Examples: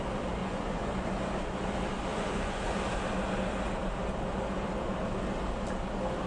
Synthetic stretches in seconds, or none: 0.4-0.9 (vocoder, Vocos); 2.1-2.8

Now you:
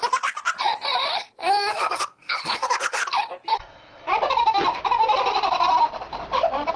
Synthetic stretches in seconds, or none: 1.7-3.0 (codec, SNAC); 3.5-4.1